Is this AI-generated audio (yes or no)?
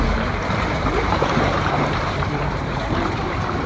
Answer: yes